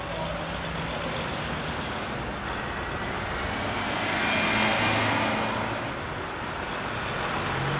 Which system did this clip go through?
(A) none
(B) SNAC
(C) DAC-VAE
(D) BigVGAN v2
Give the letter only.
A